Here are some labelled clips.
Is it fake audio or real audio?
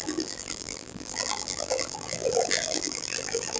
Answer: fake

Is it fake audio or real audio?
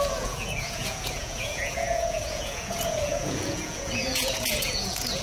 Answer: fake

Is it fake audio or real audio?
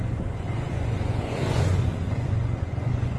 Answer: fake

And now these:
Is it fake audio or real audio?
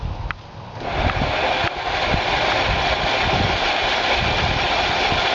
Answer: real